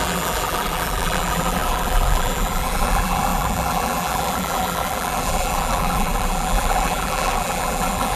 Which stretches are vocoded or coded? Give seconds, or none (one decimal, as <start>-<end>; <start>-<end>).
0.0-8.2